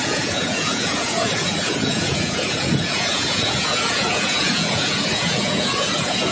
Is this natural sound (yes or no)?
no